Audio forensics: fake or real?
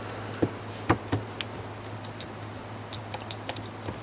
real